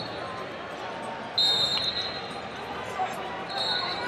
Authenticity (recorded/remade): recorded